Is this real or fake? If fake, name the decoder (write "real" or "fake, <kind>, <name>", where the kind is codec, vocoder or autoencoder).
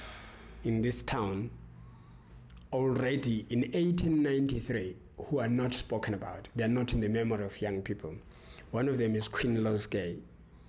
real